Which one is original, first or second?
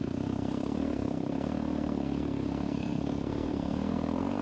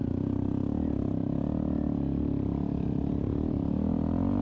second